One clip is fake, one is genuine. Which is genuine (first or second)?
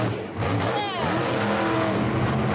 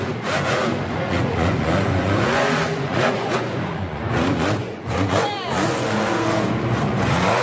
first